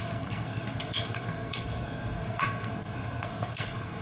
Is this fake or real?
fake